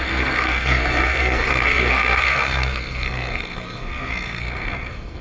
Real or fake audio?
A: fake